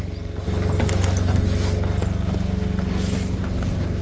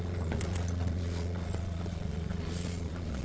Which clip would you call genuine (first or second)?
first